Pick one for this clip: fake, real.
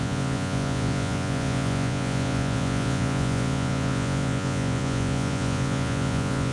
fake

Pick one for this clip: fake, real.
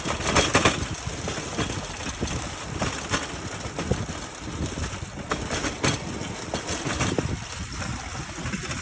real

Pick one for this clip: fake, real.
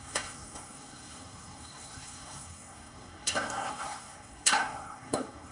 fake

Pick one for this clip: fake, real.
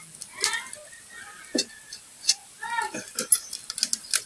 real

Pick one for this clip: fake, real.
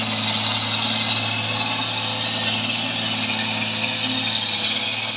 real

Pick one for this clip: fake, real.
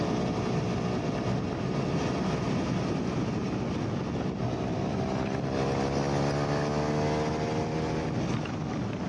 real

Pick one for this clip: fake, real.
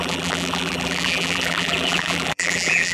fake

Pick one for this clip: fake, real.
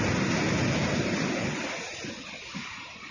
real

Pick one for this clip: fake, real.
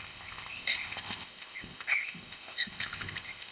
fake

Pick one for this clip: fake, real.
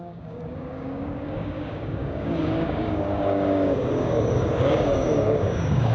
fake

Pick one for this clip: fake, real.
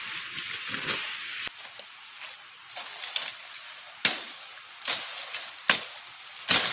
real